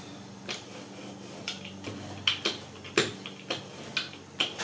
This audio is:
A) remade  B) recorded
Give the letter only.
B